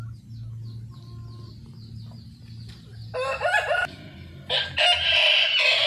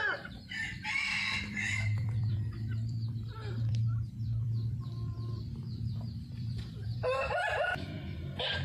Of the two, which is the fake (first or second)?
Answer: second